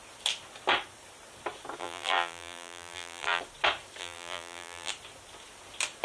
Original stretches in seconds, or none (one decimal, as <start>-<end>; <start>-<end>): 0.0-1.8; 3.4-4.0; 4.9-6.0